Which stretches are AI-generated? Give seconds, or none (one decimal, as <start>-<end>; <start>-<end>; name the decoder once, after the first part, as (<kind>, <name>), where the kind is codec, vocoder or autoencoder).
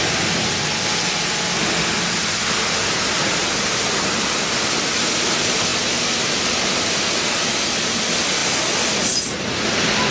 none